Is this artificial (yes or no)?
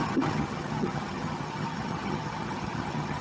yes